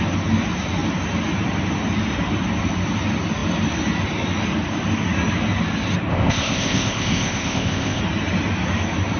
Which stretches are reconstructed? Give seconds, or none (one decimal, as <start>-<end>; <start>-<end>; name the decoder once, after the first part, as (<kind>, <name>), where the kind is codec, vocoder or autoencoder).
6.1-8.0 (codec, ZipCodec)